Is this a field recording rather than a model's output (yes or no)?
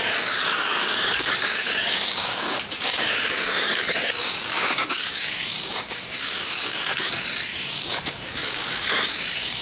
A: no